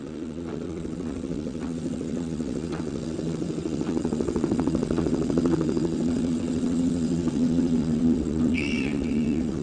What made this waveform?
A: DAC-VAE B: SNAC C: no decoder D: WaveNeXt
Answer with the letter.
D